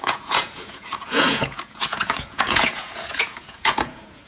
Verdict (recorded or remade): remade